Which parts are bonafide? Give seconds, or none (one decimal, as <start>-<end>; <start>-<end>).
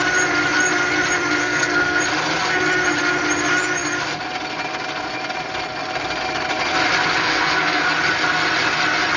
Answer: 0.0-1.4; 2.0-7.2; 7.8-9.2